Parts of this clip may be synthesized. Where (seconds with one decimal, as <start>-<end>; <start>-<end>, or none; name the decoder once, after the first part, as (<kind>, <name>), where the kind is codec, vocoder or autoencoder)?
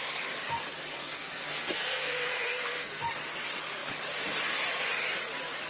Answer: 1.0-3.0 (codec, SNAC)